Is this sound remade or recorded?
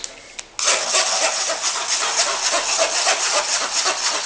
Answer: recorded